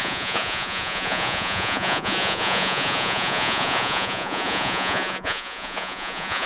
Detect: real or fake fake